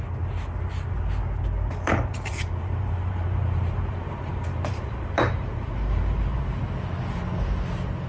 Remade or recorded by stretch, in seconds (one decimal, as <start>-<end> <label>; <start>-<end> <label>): 0.0-2.1 recorded; 2.1-6.6 remade; 6.6-8.1 recorded